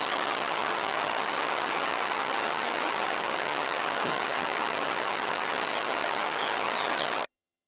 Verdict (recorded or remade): remade